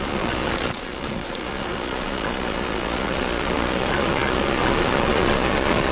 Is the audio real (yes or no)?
no